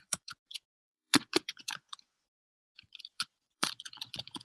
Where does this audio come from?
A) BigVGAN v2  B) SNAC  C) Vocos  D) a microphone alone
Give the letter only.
C